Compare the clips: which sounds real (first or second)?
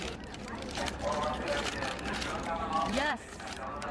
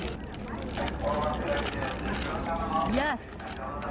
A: second